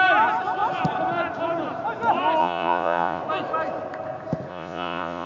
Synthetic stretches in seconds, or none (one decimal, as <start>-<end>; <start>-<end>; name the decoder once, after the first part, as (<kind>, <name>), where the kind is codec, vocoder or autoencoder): 2.4-3.2 (vocoder, Vocos); 4.5-5.3